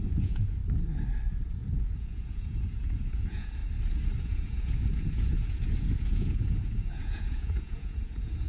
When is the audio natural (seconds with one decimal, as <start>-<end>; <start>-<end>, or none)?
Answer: 0.6-1.5; 3.6-4.2